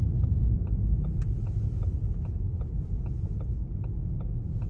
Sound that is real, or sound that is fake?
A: real